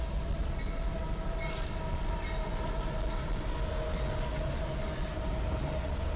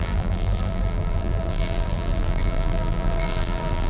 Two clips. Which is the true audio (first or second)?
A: first